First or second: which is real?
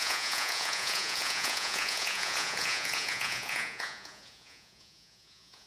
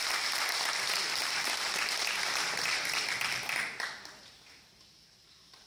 second